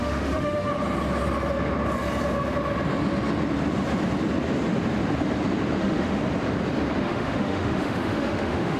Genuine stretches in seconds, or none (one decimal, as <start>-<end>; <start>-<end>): 0.7-5.8; 6.2-7.0